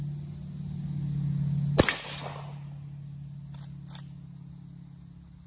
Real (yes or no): yes